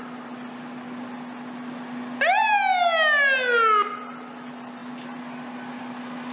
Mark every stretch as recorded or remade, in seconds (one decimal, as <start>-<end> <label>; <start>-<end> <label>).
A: 0.0-6.3 recorded